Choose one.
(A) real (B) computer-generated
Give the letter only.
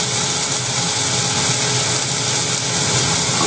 A